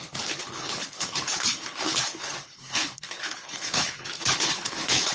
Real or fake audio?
fake